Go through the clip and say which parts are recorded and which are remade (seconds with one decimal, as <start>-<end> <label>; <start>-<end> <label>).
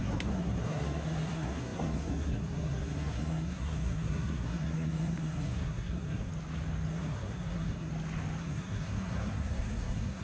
0.0-6.3 remade; 6.3-6.9 recorded; 6.9-7.9 remade; 7.9-8.4 recorded; 8.4-10.2 remade